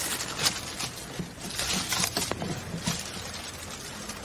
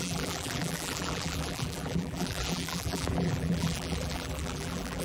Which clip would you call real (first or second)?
first